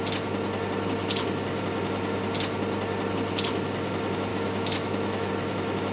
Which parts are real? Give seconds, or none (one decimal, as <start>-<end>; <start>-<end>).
0.0-4.3; 5.3-5.9